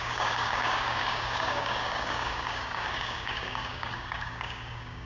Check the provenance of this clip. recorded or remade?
remade